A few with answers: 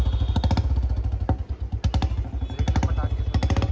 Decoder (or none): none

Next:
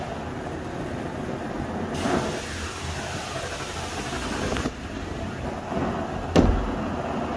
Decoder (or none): none